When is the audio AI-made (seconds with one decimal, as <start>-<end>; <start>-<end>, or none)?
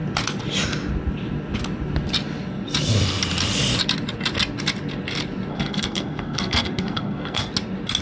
5.5-7.5